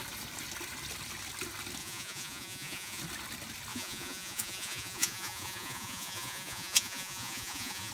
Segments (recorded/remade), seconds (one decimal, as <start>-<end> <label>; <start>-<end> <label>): 0.0-1.8 recorded; 1.8-3.0 remade; 3.0-3.7 recorded; 3.7-7.9 remade